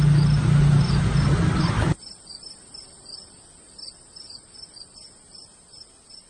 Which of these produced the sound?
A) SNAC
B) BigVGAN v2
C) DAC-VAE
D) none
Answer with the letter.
D